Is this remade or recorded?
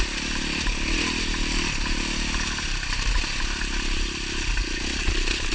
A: recorded